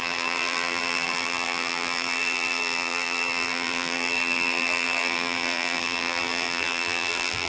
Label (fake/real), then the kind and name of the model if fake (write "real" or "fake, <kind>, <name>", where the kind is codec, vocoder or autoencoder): fake, vocoder, BigVGAN v2